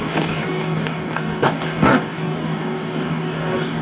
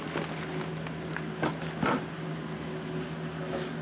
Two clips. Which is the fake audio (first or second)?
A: first